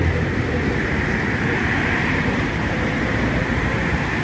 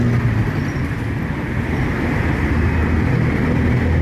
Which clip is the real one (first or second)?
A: second